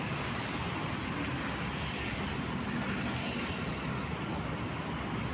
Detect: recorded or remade recorded